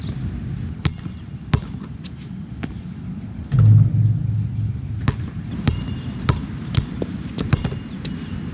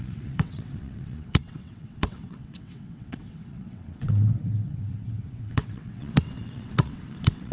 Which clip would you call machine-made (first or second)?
second